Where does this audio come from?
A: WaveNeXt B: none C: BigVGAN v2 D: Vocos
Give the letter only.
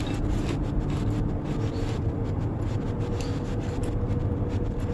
B